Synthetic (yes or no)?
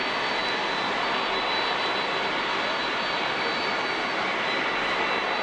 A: no